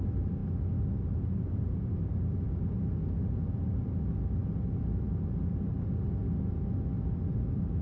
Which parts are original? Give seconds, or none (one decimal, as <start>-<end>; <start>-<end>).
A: 0.0-7.8